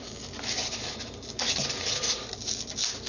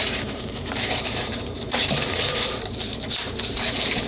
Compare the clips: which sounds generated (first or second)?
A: second